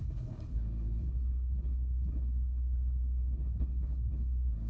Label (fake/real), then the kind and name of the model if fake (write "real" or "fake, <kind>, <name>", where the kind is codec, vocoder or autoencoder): fake, codec, HILCodec